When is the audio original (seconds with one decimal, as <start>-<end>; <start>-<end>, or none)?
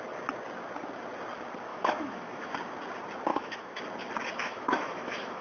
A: 0.0-1.7; 2.5-3.3; 3.8-4.4